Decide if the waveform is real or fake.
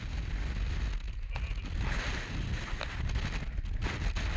real